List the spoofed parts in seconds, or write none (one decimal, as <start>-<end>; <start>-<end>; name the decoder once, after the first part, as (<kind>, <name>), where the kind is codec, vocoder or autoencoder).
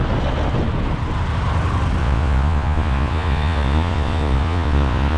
2.0-5.2 (vocoder, Vocos)